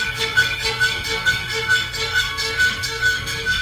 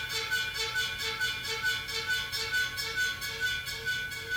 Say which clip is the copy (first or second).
first